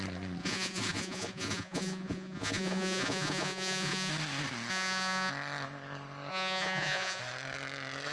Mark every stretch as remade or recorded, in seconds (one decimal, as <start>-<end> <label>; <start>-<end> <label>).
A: 0.0-0.4 recorded; 0.4-4.1 remade; 4.1-4.7 recorded; 4.7-5.3 remade; 5.3-6.3 recorded; 6.3-7.2 remade; 7.2-8.1 recorded